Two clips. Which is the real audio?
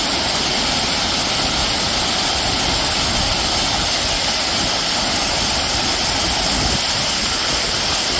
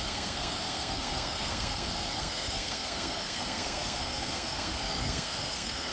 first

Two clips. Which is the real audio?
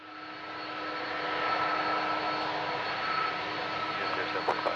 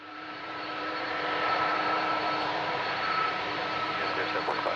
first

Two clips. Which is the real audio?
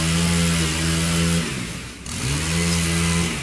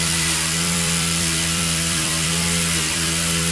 first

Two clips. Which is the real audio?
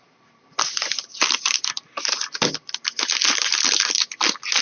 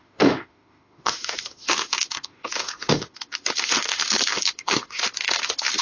first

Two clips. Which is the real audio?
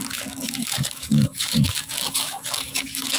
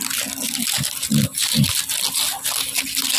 second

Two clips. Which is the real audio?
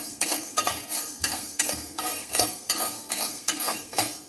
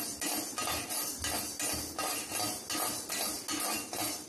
second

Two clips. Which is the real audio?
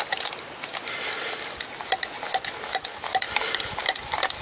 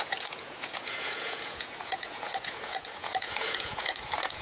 first